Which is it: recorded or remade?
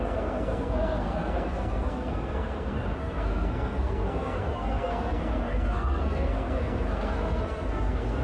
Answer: remade